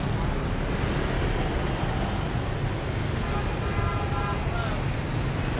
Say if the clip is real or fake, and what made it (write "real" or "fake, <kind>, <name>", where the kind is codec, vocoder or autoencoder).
real